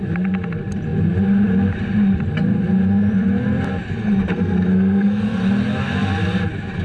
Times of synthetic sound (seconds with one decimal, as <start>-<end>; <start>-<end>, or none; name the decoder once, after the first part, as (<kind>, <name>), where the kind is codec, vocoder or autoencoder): 4.3-5.2 (codec, SNAC)